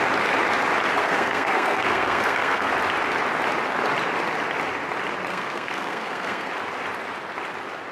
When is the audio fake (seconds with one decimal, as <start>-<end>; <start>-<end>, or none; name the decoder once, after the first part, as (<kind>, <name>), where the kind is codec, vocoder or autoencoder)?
1.0-2.7 (codec, SNAC); 5.3-6.5